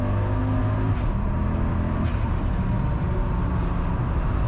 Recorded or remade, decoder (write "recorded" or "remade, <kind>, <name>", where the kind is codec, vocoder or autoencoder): recorded